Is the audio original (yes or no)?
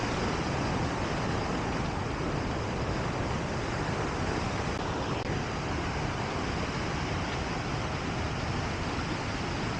yes